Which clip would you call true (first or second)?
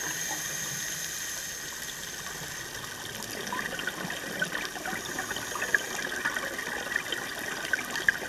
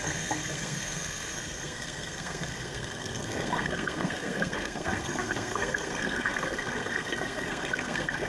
first